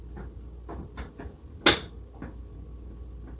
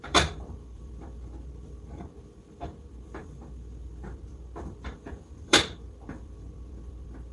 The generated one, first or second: second